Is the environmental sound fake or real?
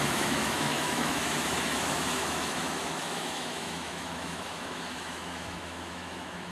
fake